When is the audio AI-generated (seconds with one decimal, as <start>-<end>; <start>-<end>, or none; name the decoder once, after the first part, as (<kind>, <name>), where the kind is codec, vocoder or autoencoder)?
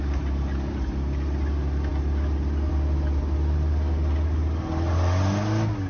none